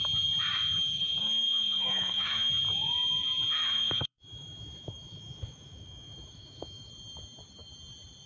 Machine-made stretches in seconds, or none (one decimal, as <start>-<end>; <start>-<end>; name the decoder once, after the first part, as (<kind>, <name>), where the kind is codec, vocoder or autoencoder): 1.2-2.5 (autoencoder, DAC-VAE); 3.5-6.9